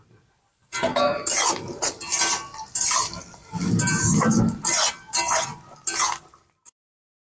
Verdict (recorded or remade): recorded